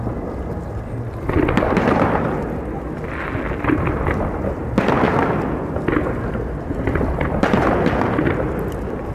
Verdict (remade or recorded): recorded